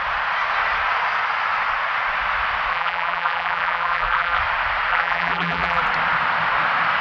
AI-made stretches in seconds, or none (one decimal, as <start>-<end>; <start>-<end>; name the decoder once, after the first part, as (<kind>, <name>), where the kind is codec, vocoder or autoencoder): 2.7-4.4 (vocoder, BigVGAN v2); 4.9-5.8